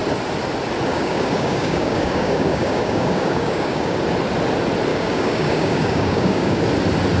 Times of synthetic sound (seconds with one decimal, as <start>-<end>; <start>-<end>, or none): 0.9-4.0; 4.9-6.6